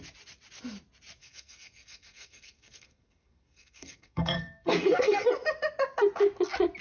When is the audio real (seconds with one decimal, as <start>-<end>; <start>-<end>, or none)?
0.0-1.2; 5.3-6.8